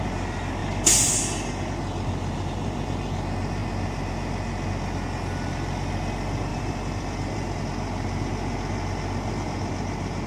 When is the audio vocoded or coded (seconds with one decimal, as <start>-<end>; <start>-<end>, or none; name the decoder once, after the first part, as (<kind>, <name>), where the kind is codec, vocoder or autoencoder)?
0.6-1.2 (vocoder, BigVGAN v2); 6.5-7.6